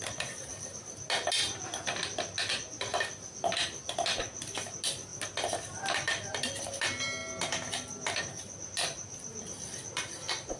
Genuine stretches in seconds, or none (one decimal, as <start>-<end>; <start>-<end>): 0.0-10.6